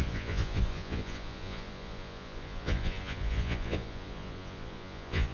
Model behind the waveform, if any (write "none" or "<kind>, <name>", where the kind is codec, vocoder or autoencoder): vocoder, Vocos